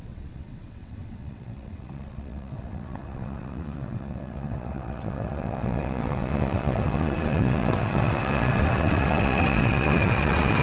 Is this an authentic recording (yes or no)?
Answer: no